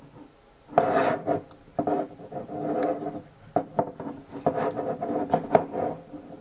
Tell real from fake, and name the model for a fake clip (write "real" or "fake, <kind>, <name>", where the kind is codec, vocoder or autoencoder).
real